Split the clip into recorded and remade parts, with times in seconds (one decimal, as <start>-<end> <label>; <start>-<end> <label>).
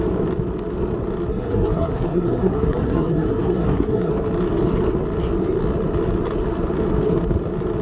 0.0-1.3 recorded; 1.3-4.1 remade; 4.1-7.8 recorded